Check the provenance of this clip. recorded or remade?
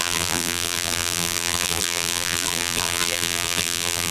remade